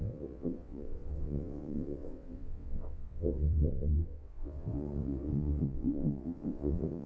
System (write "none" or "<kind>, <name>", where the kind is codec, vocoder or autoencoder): vocoder, WaveNeXt